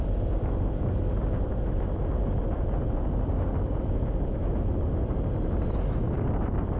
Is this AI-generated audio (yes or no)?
no